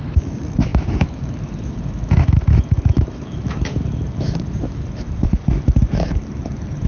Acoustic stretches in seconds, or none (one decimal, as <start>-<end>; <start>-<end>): none